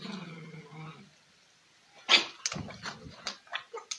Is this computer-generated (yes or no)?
no